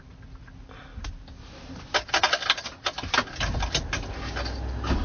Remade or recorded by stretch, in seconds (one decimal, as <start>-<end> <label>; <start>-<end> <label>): 0.0-5.0 recorded